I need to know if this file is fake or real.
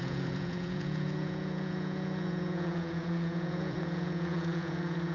fake